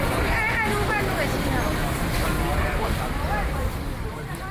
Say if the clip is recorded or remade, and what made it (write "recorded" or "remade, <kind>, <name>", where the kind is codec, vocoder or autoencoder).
recorded